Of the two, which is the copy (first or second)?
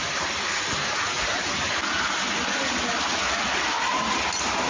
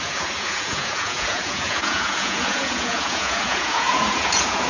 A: second